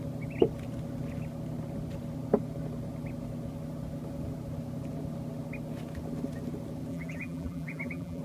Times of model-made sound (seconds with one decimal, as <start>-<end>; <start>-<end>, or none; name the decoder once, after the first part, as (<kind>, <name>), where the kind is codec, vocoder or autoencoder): 6.9-8.2 (vocoder, BigVGAN v2)